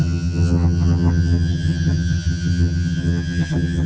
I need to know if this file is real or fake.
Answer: fake